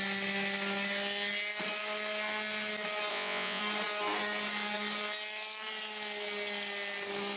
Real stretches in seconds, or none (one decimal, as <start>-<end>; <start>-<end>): 0.0-3.1; 3.6-7.4